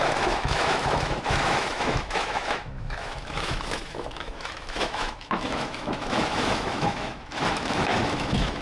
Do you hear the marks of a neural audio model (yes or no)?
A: yes